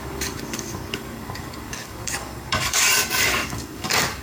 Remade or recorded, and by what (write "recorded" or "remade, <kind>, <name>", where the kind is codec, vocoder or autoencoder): remade, codec, DAC